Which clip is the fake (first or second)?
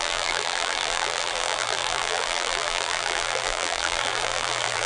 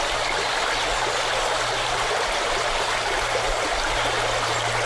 first